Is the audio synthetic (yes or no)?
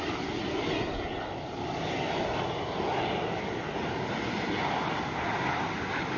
no